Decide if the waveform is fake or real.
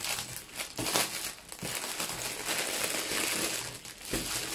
real